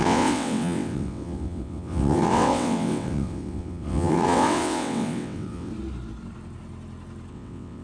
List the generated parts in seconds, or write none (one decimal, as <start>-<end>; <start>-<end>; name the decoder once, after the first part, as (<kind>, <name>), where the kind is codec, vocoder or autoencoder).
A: 0.0-5.7 (vocoder, WaveNeXt); 7.3-7.8